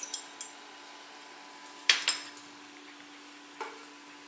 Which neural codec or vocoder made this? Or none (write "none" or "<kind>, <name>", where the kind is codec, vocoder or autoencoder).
none